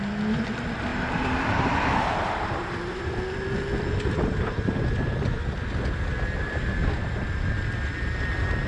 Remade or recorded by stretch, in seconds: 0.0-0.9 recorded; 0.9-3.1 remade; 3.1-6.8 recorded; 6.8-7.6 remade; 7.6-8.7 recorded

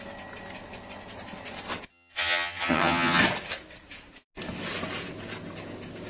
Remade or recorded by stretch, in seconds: 0.0-1.9 recorded; 1.9-3.2 remade; 3.2-6.1 recorded

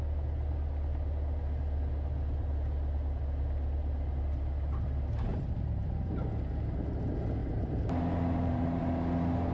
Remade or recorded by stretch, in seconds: 0.0-5.3 recorded; 5.3-6.1 remade; 6.1-7.4 recorded; 7.4-8.8 remade; 8.8-9.5 recorded